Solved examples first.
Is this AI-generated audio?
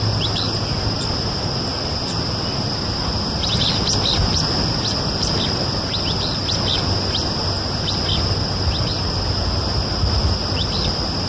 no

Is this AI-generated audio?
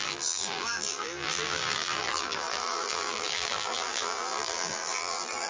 yes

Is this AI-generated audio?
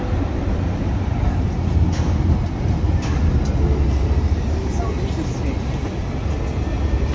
no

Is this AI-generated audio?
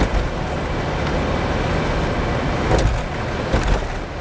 no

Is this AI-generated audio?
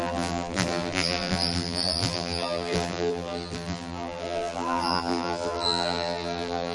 yes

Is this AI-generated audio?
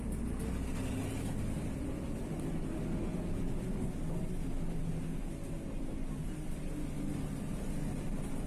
no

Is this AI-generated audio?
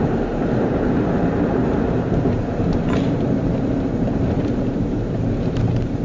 yes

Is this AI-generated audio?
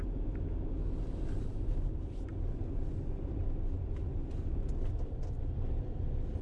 no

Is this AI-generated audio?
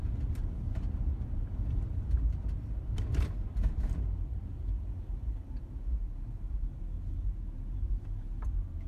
yes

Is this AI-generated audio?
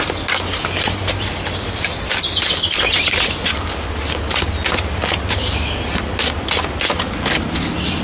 no